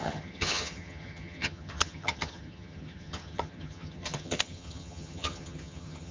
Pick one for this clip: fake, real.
fake